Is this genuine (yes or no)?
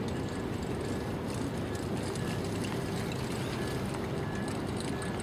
yes